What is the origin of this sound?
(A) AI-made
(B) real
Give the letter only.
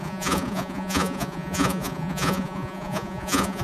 A